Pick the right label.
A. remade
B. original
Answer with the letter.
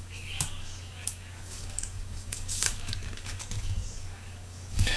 A